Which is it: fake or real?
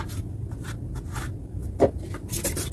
real